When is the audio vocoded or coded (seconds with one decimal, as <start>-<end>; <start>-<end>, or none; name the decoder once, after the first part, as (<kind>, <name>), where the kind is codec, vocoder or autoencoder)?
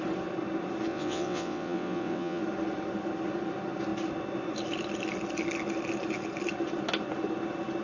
0.9-2.4 (vocoder, WaveNeXt)